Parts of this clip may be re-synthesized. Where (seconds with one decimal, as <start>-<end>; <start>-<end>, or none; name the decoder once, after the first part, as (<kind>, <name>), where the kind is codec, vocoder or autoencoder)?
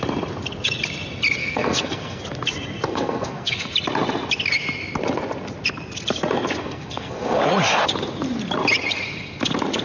1.4-2.2 (codec, SNAC); 2.9-3.7; 6.6-7.4